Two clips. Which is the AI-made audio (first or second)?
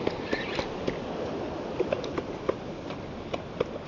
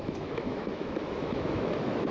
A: second